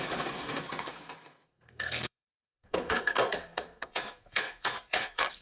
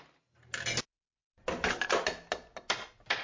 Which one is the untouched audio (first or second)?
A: second